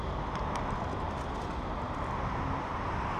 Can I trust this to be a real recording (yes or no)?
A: yes